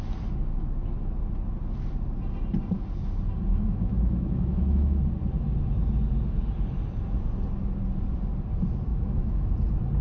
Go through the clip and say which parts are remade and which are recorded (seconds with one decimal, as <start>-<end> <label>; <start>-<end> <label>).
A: 0.0-3.5 recorded; 3.5-5.0 remade; 5.0-8.9 recorded; 8.9-9.5 remade; 9.5-10.0 recorded